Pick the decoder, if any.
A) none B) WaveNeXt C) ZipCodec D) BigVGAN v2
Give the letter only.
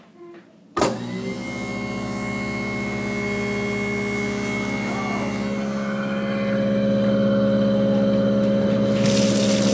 A